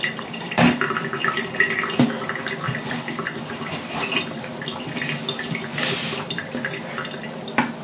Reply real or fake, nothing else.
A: real